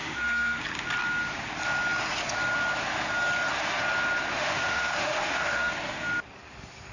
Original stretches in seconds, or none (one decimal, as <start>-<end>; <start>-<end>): 0.6-4.3; 5.7-6.9